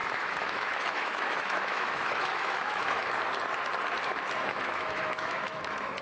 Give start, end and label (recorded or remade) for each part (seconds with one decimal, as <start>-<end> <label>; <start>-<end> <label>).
0.0-3.0 remade; 3.0-4.4 recorded; 4.4-6.0 remade